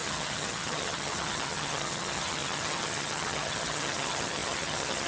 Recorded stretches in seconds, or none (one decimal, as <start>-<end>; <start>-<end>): none